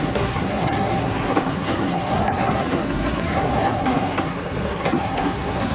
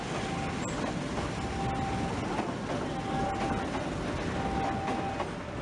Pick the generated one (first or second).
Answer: first